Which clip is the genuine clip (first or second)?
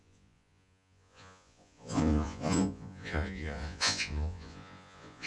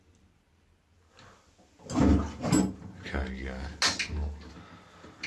second